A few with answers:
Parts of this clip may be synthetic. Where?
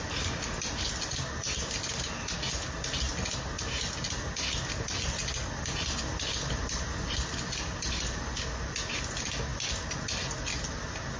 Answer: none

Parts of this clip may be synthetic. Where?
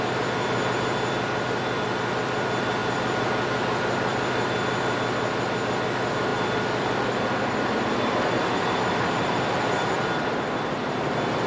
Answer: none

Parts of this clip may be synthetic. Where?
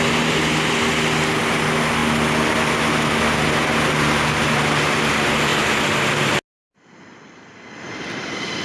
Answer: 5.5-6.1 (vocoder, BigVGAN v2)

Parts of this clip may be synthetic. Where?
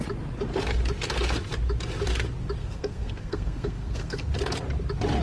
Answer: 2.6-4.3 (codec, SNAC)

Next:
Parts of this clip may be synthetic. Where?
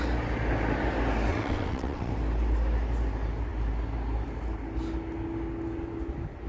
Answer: 1.3-2.1 (vocoder, WaveNeXt)